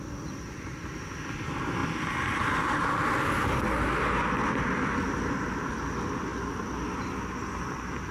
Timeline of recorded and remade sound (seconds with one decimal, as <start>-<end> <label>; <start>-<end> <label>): 0.0-8.1 recorded